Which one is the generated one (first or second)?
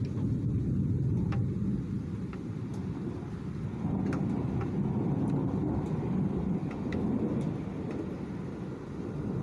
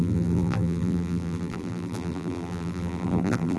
second